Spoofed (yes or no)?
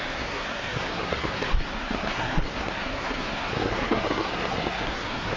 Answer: yes